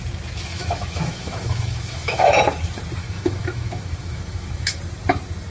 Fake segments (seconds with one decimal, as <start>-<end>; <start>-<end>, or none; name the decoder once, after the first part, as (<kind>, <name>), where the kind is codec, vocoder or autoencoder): 0.5-2.4 (autoencoder, DAC-VAE); 3.0-4.8